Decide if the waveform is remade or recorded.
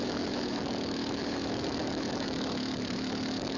remade